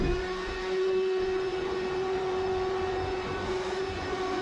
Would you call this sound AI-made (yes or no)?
yes